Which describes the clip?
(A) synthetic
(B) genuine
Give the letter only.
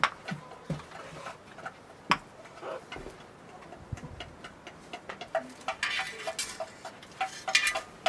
B